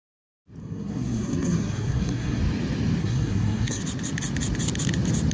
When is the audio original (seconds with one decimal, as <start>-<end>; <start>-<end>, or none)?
0.0-0.6; 2.4-3.0; 3.8-5.3